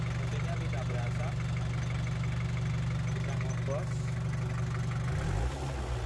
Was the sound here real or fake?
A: real